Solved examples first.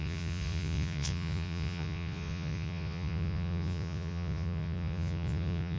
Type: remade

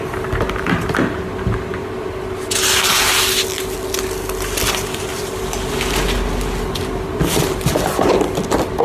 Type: recorded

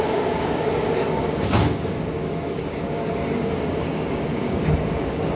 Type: remade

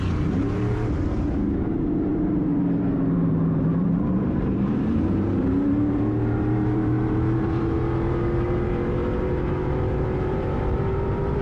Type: remade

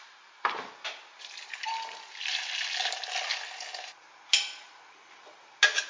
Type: recorded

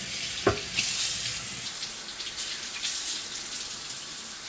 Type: recorded